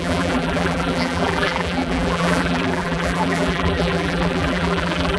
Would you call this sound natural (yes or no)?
no